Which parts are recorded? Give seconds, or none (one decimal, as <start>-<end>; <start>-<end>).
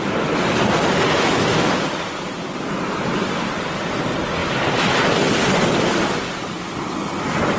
0.0-7.6